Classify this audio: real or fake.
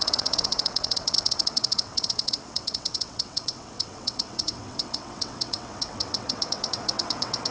fake